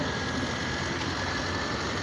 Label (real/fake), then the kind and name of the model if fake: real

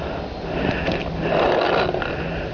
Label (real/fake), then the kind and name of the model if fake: real